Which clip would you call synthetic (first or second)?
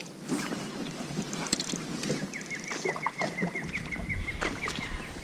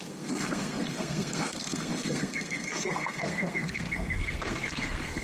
second